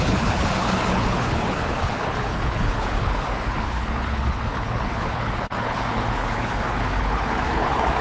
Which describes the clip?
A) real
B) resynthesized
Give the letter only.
B